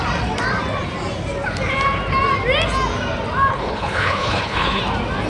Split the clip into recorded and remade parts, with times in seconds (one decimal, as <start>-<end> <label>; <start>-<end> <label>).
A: 0.0-3.5 recorded; 3.5-4.8 remade; 4.8-5.3 recorded